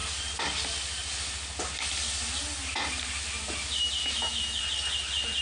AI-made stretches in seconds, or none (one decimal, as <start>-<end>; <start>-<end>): 4.0-4.6